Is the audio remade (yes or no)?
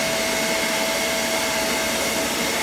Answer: no